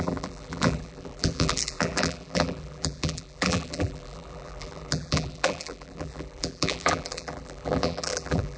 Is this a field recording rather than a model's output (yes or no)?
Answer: no